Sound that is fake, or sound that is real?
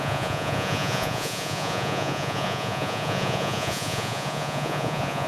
fake